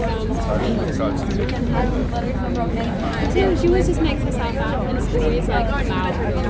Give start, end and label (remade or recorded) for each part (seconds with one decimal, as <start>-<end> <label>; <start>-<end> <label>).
0.0-6.5 recorded